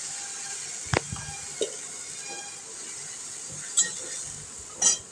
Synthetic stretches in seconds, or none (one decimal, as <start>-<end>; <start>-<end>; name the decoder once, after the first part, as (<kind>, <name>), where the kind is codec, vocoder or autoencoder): none